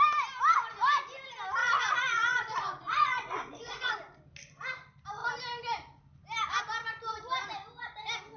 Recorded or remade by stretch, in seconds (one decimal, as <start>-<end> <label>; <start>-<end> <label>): 0.0-1.6 recorded; 1.6-3.9 remade; 3.9-8.4 recorded